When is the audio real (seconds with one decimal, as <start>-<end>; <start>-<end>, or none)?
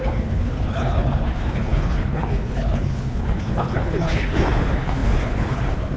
none